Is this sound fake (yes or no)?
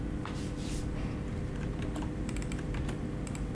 yes